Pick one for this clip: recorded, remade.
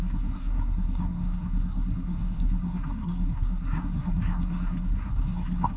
remade